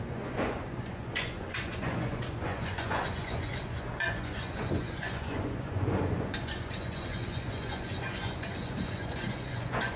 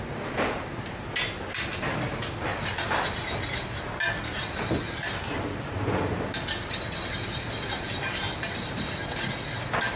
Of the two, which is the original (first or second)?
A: second